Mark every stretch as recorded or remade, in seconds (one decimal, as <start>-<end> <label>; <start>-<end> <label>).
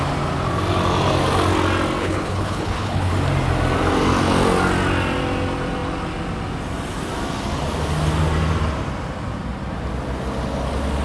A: 0.0-2.0 recorded; 2.0-3.1 remade; 3.1-11.0 recorded